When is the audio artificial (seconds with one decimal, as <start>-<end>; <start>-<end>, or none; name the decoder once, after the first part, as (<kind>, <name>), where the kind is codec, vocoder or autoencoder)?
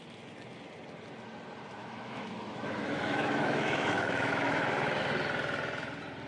1.8-5.0 (autoencoder, DAC-VAE)